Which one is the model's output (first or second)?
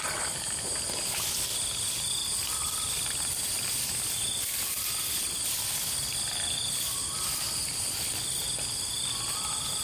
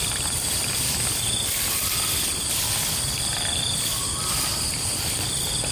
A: second